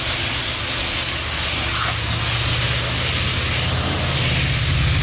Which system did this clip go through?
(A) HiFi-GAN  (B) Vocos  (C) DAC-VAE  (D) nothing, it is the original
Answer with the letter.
D